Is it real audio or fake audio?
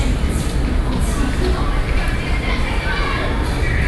real